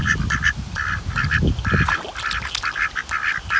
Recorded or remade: recorded